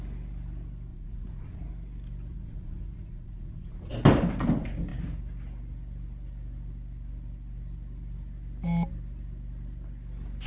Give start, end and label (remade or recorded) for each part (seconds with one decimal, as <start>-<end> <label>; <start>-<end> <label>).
0.0-0.9 recorded; 0.9-1.7 remade; 1.7-2.3 recorded; 2.3-3.9 remade; 3.9-10.5 recorded